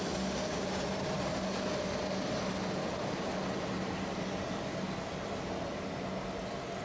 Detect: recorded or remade recorded